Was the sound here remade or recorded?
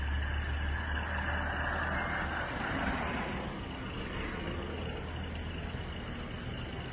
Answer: recorded